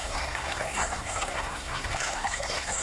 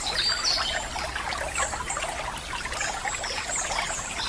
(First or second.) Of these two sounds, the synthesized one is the first